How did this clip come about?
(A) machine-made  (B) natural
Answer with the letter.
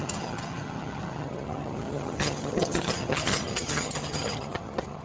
A